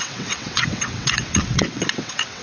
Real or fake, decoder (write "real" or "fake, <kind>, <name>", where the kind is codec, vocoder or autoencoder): fake, vocoder, WaveNeXt